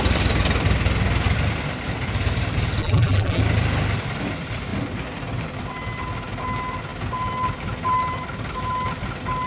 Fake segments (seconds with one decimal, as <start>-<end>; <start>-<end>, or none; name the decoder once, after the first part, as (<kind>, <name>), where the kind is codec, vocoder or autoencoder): 2.8-3.4 (vocoder, BigVGAN v2)

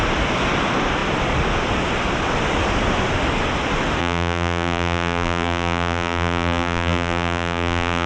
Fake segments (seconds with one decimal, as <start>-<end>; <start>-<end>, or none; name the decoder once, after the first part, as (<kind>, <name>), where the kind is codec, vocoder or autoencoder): 4.0-8.1 (vocoder, BigVGAN v2)

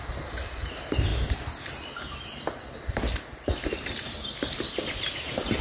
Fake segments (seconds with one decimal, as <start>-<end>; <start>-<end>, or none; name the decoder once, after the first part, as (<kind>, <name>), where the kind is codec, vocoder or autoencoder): 0.0-1.1 (vocoder, BigVGAN v2); 3.8-5.6

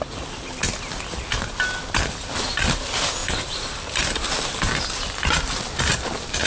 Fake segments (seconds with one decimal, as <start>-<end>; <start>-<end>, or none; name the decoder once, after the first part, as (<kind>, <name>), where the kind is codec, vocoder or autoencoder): 3.2-4.8 (vocoder, BigVGAN v2)

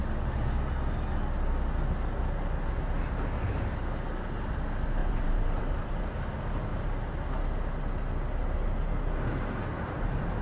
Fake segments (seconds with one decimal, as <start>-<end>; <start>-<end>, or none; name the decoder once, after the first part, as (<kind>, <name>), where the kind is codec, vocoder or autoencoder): 5.0-6.0 (vocoder, BigVGAN v2)

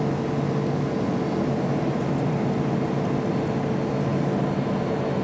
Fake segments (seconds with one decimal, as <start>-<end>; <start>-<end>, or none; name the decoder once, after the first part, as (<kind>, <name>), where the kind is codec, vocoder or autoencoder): 1.7-2.8 (vocoder, BigVGAN v2)

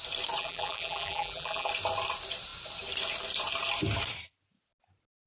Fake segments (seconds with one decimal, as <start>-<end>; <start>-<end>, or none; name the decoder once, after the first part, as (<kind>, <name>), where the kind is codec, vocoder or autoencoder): 0.4-1.7 (vocoder, BigVGAN v2)